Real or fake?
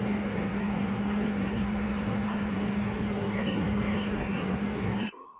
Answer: fake